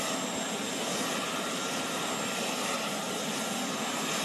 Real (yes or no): yes